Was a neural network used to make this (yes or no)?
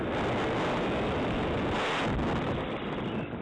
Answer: no